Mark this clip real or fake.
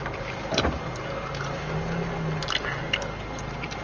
real